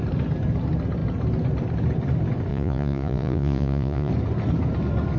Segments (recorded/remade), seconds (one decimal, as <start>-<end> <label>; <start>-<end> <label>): 0.0-2.5 recorded; 2.5-4.1 remade; 4.1-5.2 recorded

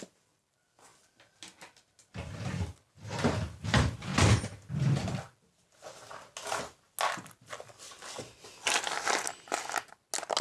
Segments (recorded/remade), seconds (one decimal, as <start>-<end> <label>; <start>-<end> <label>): 0.0-10.4 recorded

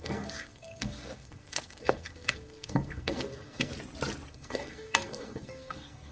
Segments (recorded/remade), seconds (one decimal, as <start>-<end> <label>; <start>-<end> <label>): 0.0-3.7 remade; 3.7-4.3 recorded; 4.3-6.1 remade